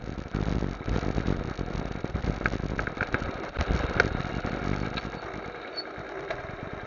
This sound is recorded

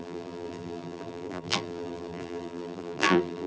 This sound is remade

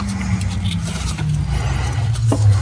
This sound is recorded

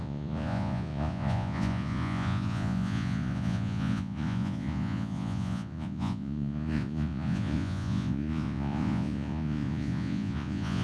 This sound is remade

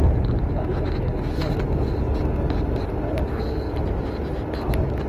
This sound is recorded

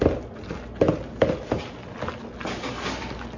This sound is recorded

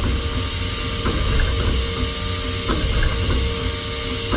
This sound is recorded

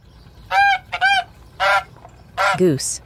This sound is recorded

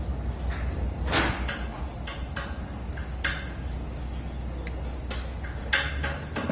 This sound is recorded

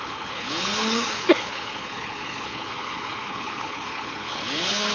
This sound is remade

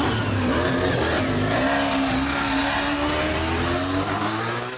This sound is recorded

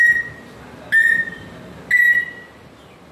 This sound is recorded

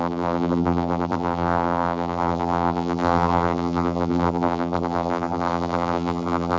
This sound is remade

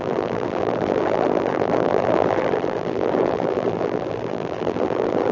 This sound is remade